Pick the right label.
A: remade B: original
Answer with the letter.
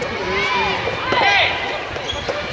B